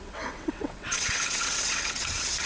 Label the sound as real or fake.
fake